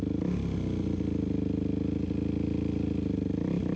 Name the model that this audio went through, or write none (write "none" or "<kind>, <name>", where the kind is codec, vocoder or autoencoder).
none